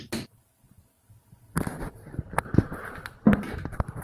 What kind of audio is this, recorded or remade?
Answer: recorded